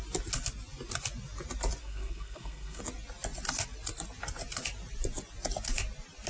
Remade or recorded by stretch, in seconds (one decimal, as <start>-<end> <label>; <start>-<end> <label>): 0.0-1.8 recorded; 1.8-2.8 remade; 2.8-6.3 recorded